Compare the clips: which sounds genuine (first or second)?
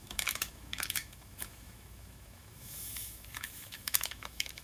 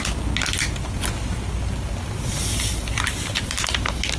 second